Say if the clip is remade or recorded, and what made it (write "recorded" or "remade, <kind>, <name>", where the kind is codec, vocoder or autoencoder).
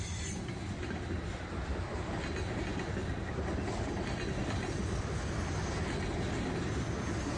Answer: recorded